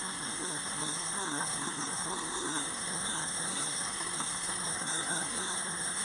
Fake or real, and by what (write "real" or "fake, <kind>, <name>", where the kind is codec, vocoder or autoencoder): fake, codec, SNAC